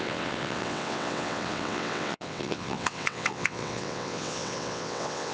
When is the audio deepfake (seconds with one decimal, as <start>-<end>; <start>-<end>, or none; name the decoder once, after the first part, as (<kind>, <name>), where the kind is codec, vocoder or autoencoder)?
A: 0.0-5.3 (vocoder, WaveNeXt)